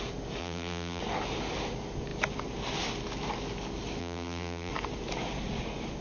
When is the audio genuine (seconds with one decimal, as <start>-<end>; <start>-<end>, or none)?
0.0-0.4; 1.0-4.0; 4.7-6.0